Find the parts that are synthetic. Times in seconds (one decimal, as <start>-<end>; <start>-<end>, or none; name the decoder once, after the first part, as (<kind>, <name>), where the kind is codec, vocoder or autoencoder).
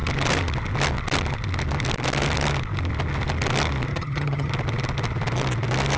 3.9-4.5 (vocoder, HiFi-GAN)